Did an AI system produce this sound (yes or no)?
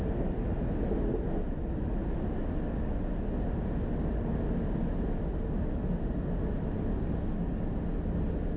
no